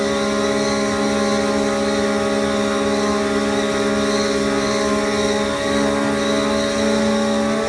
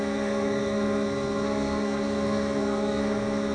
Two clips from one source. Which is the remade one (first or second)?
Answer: second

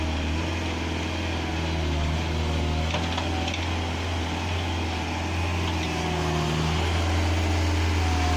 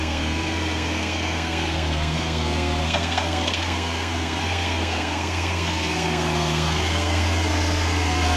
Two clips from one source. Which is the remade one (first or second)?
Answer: second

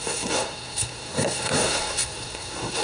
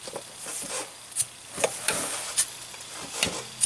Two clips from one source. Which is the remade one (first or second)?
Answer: first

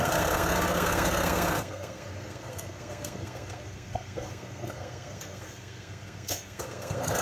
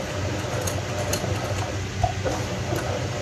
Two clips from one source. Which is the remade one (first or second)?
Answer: first